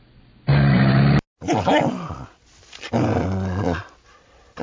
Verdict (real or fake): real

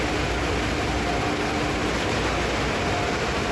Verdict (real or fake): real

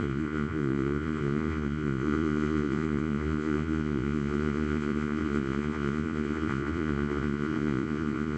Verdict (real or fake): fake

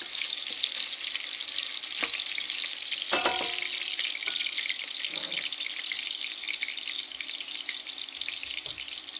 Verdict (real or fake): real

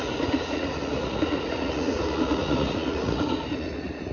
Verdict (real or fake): fake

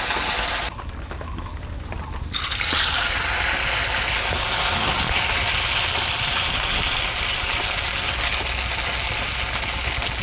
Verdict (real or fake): real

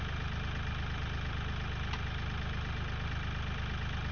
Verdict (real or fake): real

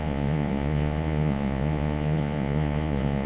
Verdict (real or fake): fake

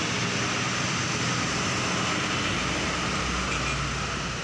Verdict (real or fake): real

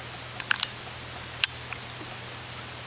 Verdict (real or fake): real